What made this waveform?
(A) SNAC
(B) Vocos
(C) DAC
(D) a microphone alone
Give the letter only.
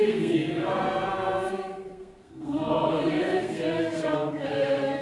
A